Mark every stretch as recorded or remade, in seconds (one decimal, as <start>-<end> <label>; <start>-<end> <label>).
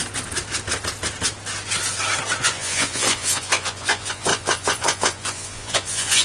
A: 0.0-2.4 recorded; 2.4-6.2 remade